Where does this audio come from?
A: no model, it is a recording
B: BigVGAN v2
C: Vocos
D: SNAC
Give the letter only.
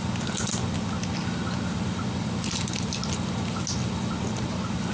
A